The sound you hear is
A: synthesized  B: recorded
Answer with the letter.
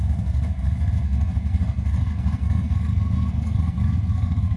A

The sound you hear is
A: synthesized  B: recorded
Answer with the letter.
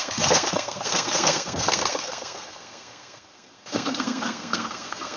A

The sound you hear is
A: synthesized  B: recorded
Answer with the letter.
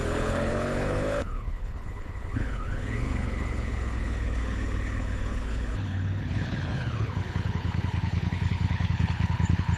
A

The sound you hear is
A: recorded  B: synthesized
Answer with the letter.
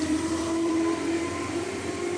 B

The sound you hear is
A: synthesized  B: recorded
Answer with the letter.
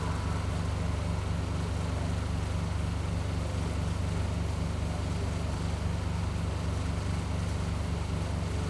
B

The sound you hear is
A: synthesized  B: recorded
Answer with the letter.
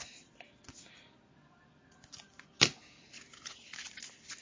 B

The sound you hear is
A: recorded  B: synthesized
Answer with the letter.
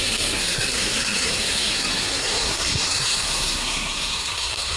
B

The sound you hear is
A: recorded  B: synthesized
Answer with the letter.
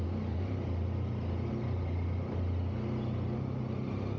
A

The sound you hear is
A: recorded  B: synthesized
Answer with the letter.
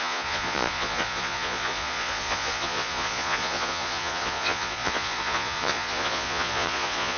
B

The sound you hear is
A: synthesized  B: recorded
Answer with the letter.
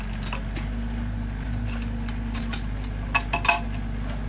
B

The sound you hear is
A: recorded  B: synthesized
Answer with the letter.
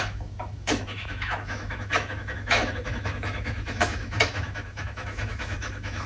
B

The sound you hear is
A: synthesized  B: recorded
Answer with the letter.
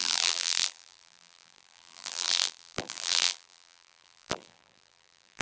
A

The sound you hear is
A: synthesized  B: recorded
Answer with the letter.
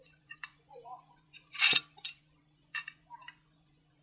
A